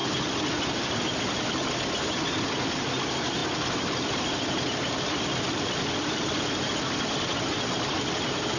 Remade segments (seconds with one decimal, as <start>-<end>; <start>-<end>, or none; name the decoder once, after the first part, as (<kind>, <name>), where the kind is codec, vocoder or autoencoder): none